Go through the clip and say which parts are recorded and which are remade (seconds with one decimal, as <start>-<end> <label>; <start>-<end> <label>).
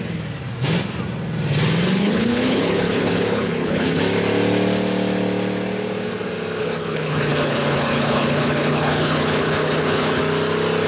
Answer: 0.0-2.0 recorded; 2.0-4.0 remade; 4.0-6.6 recorded; 6.6-10.2 remade; 10.2-10.9 recorded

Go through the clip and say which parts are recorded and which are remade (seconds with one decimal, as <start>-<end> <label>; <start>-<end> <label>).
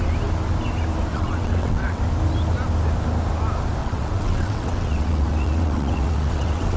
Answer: 0.0-1.1 recorded; 1.1-2.0 remade; 2.0-3.8 recorded; 3.8-6.8 remade